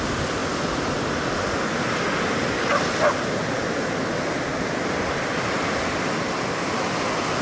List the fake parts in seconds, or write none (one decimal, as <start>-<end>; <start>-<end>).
4.5-6.7